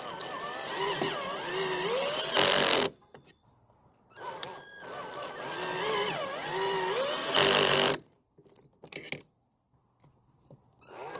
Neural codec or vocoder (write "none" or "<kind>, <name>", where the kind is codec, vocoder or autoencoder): none